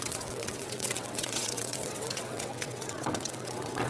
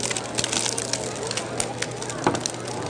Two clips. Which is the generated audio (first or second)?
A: first